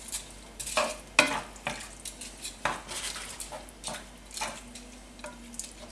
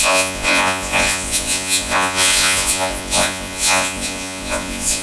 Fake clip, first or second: second